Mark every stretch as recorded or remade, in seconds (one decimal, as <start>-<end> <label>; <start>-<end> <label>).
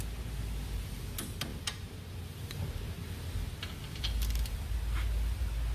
0.0-1.5 recorded; 1.5-3.1 remade; 3.1-5.7 recorded